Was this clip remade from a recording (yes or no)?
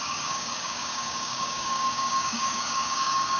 yes